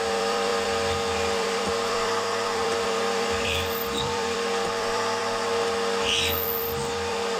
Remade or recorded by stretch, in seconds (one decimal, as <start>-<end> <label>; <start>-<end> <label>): 0.0-5.2 remade; 5.2-6.6 recorded; 6.6-7.4 remade